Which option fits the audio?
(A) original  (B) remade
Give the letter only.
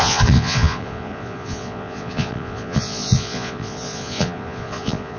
B